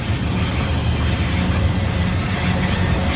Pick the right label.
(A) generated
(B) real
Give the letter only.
B